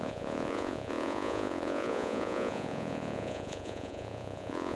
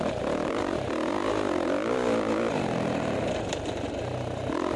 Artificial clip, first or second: first